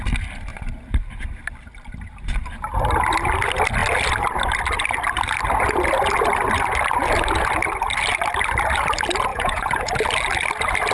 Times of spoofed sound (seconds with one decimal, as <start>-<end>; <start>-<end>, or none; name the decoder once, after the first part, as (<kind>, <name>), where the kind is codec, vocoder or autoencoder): 9.3-9.9 (vocoder, Vocos)